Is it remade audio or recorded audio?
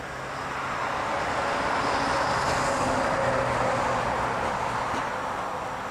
recorded